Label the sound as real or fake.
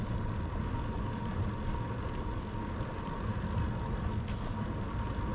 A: real